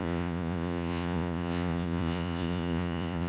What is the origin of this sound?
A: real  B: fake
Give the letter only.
B